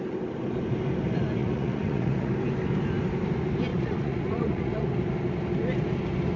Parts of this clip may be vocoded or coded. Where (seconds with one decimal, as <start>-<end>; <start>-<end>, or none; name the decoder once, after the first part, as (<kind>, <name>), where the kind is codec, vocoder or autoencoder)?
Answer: 1.4-2.3 (vocoder, Vocos); 3.7-4.9